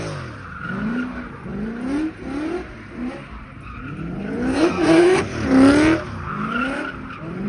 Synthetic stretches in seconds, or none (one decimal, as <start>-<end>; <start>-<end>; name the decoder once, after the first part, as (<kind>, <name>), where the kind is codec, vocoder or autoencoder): 4.5-5.2 (codec, SNAC)